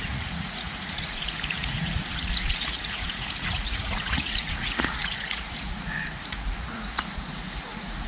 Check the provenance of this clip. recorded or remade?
remade